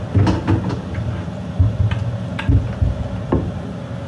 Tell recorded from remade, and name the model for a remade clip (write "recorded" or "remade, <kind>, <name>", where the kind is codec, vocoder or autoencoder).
recorded